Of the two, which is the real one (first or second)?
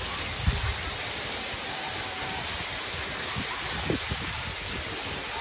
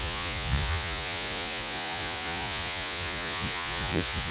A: first